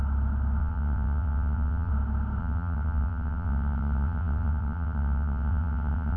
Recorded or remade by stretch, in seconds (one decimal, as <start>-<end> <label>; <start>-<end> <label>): 0.0-0.6 recorded; 0.6-1.9 remade; 1.9-2.4 recorded; 2.4-6.2 remade